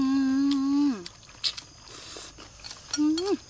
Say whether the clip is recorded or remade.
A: recorded